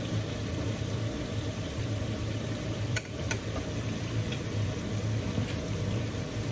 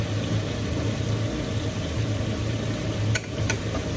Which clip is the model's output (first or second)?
first